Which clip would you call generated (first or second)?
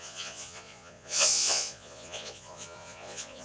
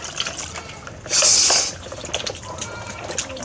first